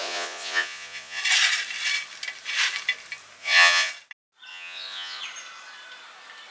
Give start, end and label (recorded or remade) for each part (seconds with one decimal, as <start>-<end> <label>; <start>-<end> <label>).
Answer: 0.0-1.2 remade; 1.2-3.4 recorded; 3.4-3.9 remade; 3.9-4.5 recorded; 4.5-5.2 remade; 5.2-6.5 recorded